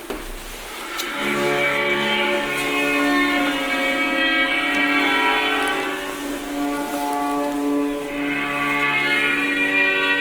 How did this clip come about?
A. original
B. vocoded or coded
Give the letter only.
A